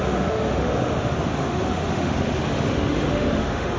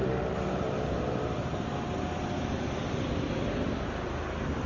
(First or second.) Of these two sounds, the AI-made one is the first